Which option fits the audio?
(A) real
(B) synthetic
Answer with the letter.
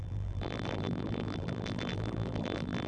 B